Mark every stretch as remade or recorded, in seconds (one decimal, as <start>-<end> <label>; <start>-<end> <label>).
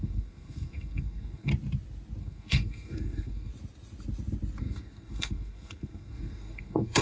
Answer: 0.0-1.5 remade; 1.5-2.2 recorded; 2.2-3.5 remade; 3.5-4.6 recorded; 4.6-7.0 remade